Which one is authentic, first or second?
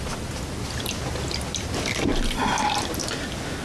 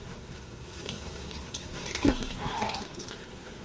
first